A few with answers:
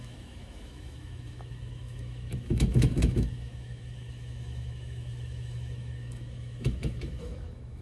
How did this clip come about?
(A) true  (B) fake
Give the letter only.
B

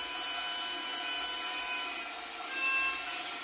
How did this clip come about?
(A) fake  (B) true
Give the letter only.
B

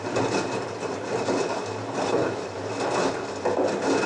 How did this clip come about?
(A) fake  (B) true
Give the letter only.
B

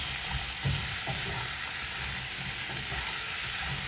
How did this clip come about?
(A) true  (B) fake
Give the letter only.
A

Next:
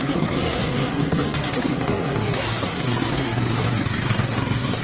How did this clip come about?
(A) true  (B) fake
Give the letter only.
B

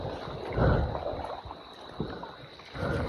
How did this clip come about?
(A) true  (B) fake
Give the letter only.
A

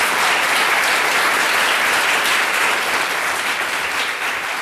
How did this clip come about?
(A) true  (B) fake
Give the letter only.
A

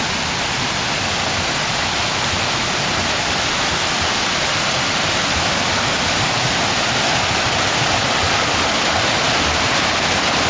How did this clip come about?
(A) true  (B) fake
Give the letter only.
A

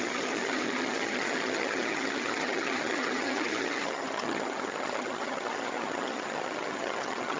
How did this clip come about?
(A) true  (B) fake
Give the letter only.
B